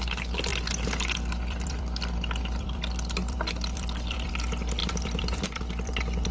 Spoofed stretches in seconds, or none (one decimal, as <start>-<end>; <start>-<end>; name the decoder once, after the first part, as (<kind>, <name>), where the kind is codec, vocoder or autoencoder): 0.5-4.3 (vocoder, BigVGAN v2); 4.8-6.3